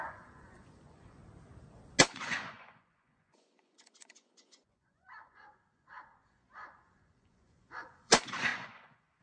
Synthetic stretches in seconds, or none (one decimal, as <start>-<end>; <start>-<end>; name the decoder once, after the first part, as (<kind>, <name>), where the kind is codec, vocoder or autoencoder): 0.0-1.2 (vocoder, Vocos); 2.0-9.2